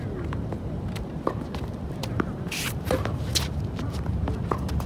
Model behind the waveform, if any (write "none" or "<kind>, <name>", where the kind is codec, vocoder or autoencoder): vocoder, BigVGAN v2